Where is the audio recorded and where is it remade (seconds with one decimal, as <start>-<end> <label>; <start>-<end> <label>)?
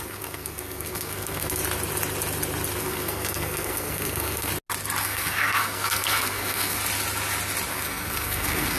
0.0-1.6 remade; 1.6-2.8 recorded; 2.8-4.5 remade; 4.5-5.0 recorded; 5.0-6.8 remade; 6.8-7.7 recorded; 7.7-8.8 remade